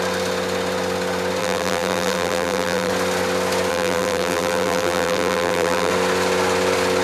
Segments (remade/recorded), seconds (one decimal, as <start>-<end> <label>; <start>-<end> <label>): 0.0-1.4 recorded; 1.4-2.9 remade; 2.9-3.7 recorded; 3.7-5.9 remade; 5.9-7.0 recorded